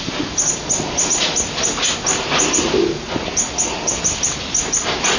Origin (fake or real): real